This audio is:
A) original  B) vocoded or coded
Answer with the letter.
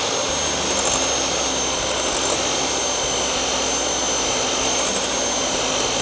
A